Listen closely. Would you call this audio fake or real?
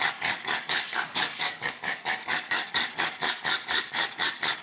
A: fake